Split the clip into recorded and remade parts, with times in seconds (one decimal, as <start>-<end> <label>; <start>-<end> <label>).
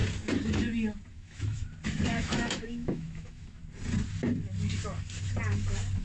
0.0-1.1 recorded; 1.1-1.6 remade; 1.6-2.1 recorded; 2.1-3.6 remade; 3.6-6.0 recorded